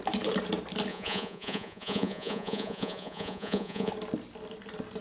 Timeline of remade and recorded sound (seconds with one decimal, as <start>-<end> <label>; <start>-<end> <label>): 0.0-0.9 recorded; 0.9-3.9 remade; 3.9-5.0 recorded